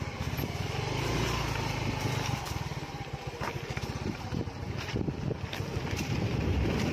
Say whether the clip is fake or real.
real